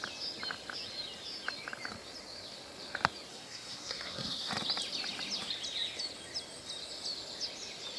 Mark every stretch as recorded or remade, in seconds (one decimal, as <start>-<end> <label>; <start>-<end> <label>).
0.0-3.3 recorded; 3.3-4.5 remade; 4.5-8.0 recorded